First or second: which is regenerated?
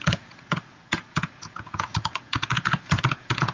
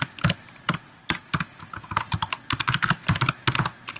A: first